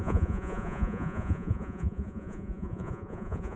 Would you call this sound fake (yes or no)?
yes